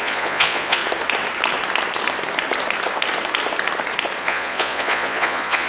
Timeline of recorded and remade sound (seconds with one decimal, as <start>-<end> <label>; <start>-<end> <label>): 0.0-0.8 remade; 0.8-4.2 recorded; 4.2-5.7 remade